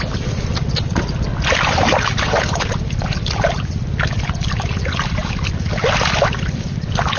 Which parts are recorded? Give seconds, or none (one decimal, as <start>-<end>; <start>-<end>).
0.0-7.2